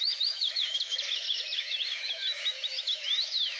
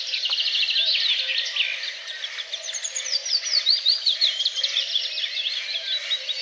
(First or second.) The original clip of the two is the second